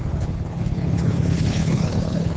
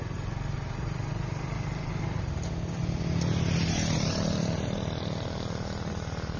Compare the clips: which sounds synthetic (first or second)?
first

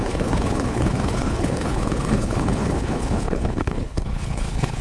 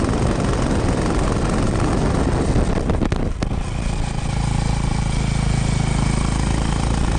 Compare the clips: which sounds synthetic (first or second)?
first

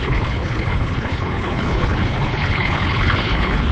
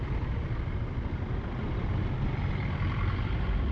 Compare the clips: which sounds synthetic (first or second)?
first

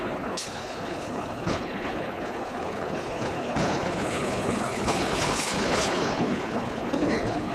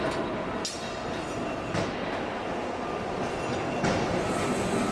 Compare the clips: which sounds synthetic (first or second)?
first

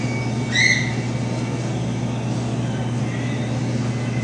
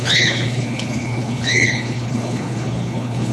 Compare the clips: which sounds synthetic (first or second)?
second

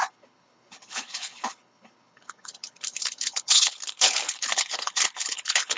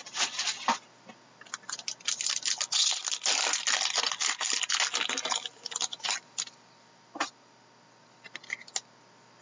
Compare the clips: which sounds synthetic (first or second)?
first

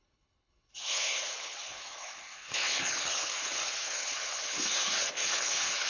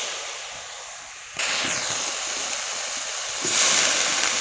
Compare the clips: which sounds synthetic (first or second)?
first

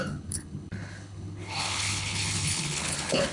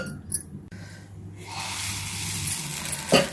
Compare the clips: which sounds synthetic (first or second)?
first